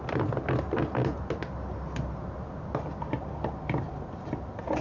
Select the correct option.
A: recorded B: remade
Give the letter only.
A